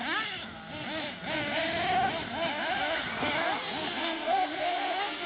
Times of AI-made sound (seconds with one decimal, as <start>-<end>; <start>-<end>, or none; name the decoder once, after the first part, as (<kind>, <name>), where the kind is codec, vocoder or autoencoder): 3.8-5.3 (codec, SNAC)